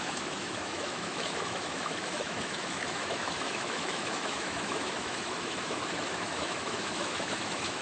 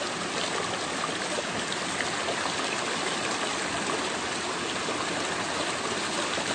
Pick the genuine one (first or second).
second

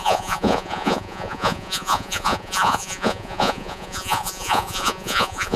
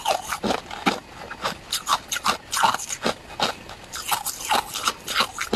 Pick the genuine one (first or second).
second